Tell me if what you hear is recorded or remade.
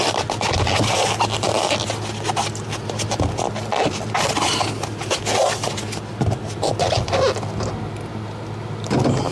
recorded